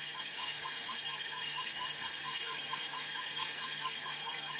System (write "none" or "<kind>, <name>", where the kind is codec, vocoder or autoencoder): codec, SNAC